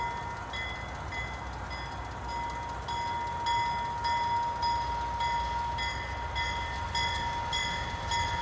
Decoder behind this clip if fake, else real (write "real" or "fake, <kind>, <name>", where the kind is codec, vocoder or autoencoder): real